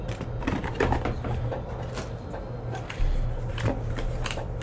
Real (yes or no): yes